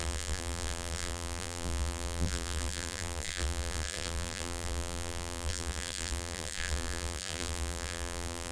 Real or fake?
fake